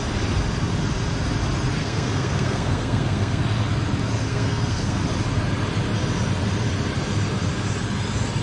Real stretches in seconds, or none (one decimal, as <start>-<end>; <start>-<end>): 0.0-1.8; 3.4-4.3; 5.0-8.4